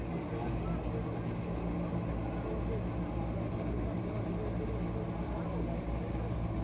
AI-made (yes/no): no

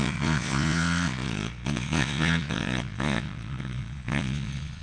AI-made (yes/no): yes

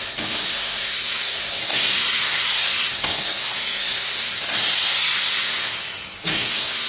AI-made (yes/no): yes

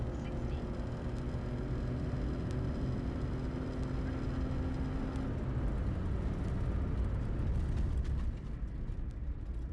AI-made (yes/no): no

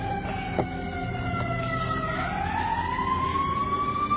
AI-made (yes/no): no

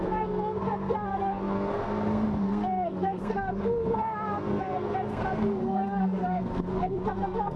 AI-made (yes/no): yes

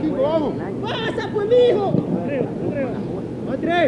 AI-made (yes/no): no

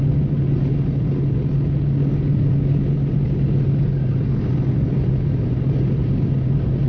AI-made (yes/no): no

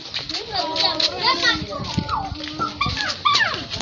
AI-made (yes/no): no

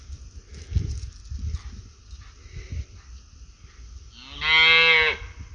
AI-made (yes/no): no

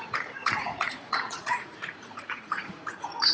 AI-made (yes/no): yes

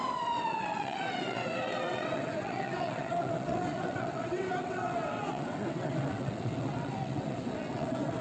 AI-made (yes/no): yes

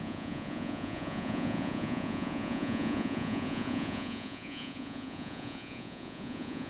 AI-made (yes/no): yes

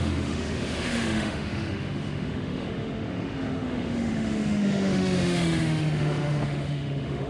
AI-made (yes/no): yes